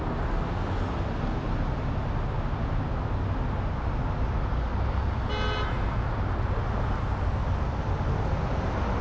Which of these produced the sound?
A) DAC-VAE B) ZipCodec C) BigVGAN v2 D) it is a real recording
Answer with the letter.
D